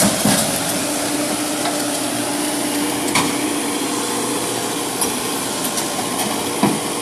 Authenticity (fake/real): fake